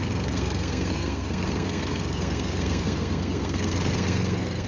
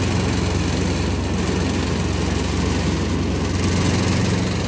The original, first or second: second